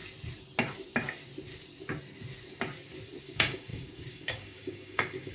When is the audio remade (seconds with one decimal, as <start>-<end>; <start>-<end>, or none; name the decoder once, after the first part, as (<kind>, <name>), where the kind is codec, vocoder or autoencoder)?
3.2-5.3 (codec, DAC)